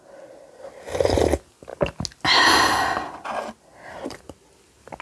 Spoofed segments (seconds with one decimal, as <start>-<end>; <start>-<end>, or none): none